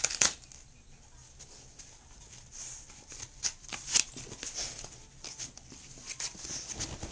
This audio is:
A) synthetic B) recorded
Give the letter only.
B